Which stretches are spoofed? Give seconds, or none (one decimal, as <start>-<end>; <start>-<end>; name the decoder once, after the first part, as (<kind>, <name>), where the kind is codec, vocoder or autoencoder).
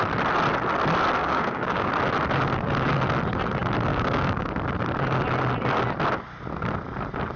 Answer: 1.2-1.9 (codec, DAC); 3.9-4.5